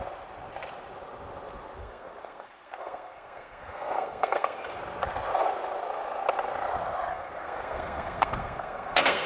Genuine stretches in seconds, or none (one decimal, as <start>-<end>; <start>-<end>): 0.0-1.8; 4.8-7.1